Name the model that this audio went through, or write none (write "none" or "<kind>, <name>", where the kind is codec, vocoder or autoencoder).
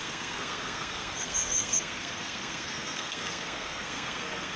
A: codec, SNAC